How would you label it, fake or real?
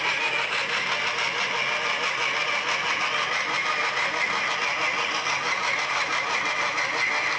real